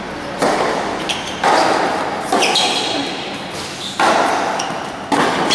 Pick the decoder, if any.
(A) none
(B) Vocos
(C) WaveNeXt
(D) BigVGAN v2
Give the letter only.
A